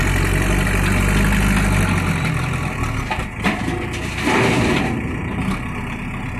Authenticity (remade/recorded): recorded